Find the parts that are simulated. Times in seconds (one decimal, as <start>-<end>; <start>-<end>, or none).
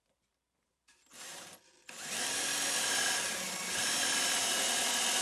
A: 0.0-5.2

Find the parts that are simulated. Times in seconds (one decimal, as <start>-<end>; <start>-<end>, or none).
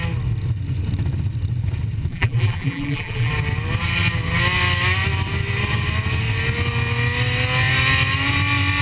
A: 2.1-3.3